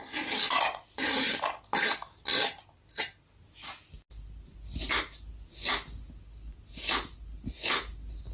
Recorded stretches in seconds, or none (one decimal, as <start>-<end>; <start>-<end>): 0.0-8.3